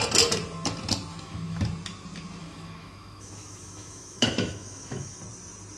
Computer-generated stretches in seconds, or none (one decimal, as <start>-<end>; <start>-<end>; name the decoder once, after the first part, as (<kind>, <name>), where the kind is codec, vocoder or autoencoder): 1.1-1.6 (autoencoder, DAC-VAE); 2.4-5.2